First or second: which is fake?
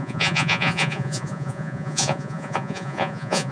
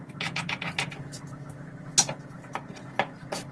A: first